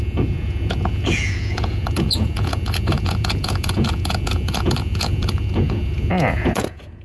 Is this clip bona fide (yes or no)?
no